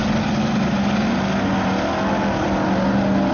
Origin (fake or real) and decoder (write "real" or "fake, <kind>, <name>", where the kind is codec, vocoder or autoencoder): real